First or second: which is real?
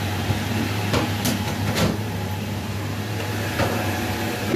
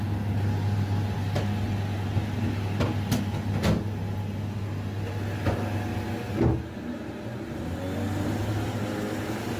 second